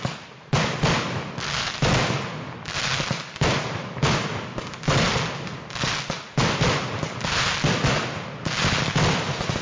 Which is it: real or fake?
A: real